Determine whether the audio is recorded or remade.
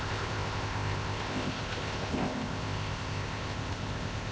remade